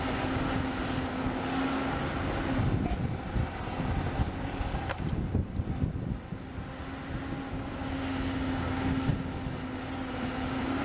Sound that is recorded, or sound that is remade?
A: recorded